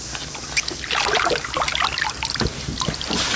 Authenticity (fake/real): real